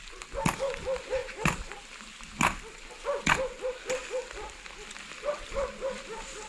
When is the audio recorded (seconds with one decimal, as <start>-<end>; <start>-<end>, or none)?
0.0-6.5